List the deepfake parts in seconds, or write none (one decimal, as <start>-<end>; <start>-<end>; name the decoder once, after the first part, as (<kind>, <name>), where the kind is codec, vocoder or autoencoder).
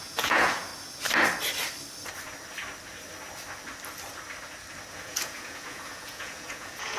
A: 0.0-0.7 (vocoder, Vocos); 4.9-7.0